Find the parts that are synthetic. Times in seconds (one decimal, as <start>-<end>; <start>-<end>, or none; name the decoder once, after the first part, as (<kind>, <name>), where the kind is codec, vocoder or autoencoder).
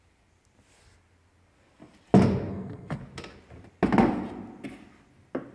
2.5-3.0 (codec, SNAC)